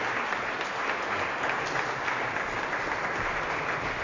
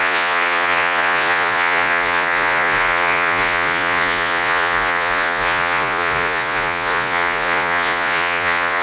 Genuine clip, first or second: first